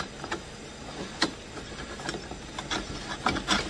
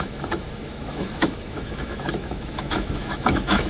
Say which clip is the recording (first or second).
first